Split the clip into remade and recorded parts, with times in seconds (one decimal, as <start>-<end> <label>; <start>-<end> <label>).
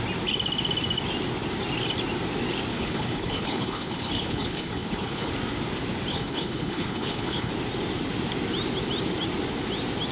0.0-2.7 recorded; 2.7-5.3 remade; 5.3-6.1 recorded; 6.1-7.5 remade; 7.5-10.1 recorded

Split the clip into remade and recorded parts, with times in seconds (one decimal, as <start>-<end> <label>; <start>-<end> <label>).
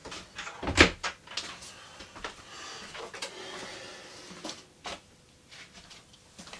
0.0-6.6 recorded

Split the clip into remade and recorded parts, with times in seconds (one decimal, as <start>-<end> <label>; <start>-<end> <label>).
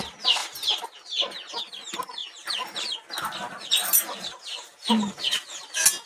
0.0-0.4 recorded; 0.4-1.5 remade; 1.5-3.8 recorded; 3.8-4.9 remade; 4.9-6.1 recorded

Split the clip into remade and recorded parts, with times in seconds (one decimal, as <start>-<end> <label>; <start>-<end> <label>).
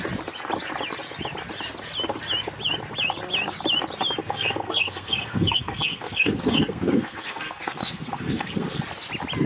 0.0-4.2 recorded; 4.2-8.8 remade; 8.8-9.5 recorded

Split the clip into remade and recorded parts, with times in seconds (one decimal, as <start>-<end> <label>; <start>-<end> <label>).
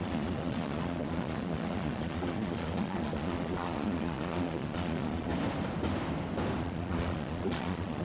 0.0-5.3 remade; 5.3-6.6 recorded; 6.6-8.0 remade